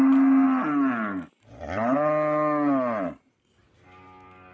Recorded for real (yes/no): yes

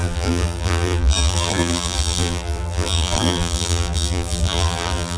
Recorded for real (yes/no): no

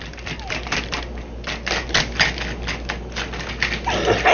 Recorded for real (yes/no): yes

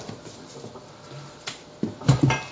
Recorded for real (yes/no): yes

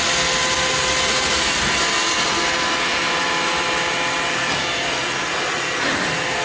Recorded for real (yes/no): yes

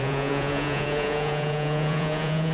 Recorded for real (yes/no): no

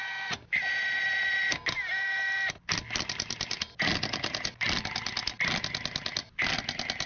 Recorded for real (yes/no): yes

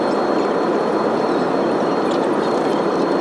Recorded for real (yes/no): yes